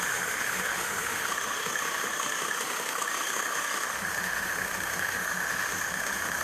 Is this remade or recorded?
remade